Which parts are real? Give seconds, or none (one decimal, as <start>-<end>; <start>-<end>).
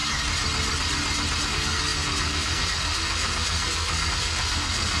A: 0.0-1.5